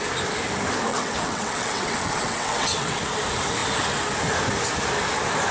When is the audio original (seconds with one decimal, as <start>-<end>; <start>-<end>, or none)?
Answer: 0.0-0.9; 3.0-5.5